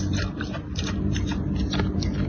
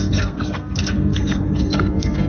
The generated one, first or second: second